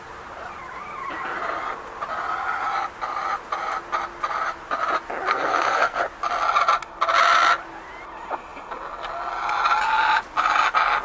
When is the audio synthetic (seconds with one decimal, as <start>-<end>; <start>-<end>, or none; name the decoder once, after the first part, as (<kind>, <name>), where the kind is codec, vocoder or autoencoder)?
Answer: 5.3-6.0 (codec, SNAC)